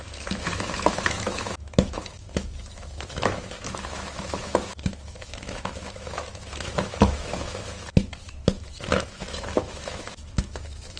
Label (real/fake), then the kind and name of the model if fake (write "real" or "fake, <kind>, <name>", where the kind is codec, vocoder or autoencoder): fake, autoencoder, DAC-VAE